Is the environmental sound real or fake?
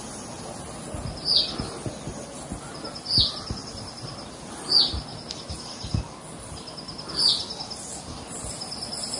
real